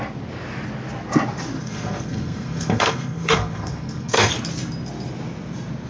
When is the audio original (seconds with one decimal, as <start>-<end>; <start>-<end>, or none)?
0.0-1.6; 4.3-5.9